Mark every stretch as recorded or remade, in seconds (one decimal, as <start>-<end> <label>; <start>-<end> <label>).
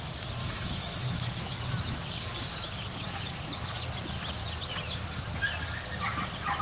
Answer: 0.0-0.4 recorded; 0.4-1.7 remade; 1.7-6.6 recorded